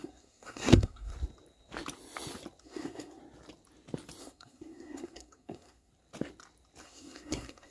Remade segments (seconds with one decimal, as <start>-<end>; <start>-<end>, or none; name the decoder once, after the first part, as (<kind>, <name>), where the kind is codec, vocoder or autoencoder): 0.0-1.1 (codec, SNAC); 2.6-3.2; 4.2-5.9; 6.8-7.7